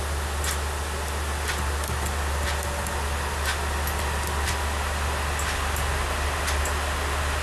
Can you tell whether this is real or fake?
real